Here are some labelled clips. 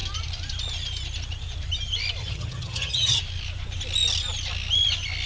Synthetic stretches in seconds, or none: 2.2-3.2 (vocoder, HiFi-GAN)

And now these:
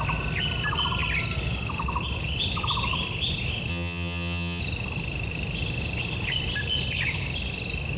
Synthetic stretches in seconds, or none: 3.7-4.6 (vocoder, HiFi-GAN)

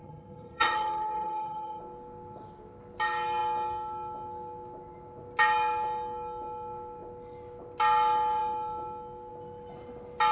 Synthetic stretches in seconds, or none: 0.0-1.8 (vocoder, HiFi-GAN)

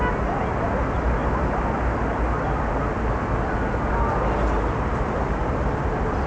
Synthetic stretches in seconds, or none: none

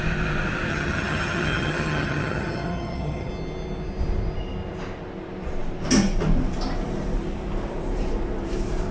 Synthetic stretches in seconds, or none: 0.7-3.3 (vocoder, HiFi-GAN)

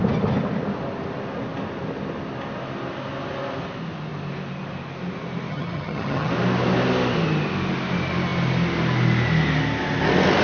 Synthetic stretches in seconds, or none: 5.5-6.3 (vocoder, HiFi-GAN)